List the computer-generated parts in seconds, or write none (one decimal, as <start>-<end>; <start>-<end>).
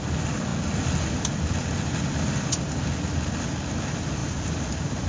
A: none